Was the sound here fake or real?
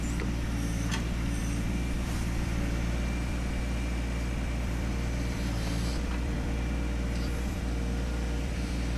fake